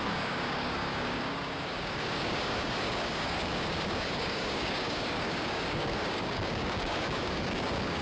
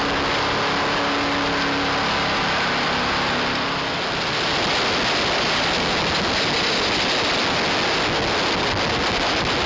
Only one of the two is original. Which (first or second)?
second